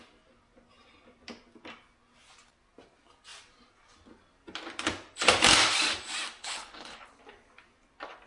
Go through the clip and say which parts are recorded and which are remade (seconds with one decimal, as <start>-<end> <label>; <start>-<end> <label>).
0.0-6.4 recorded; 6.4-7.2 remade; 7.2-8.3 recorded